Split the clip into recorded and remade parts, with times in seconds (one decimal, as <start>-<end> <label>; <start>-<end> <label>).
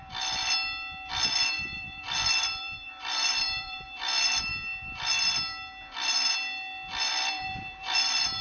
0.0-0.4 remade; 0.4-1.1 recorded; 1.1-4.5 remade; 4.5-7.1 recorded; 7.1-8.4 remade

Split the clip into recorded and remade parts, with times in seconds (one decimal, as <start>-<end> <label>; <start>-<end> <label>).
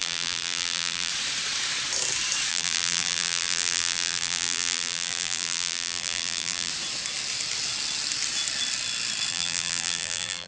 0.0-1.1 remade; 1.1-2.5 recorded; 2.5-6.7 remade; 6.7-9.3 recorded; 9.3-10.5 remade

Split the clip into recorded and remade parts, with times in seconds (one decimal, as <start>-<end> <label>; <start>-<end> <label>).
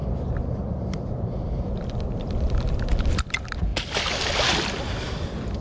0.0-3.3 remade; 3.3-5.6 recorded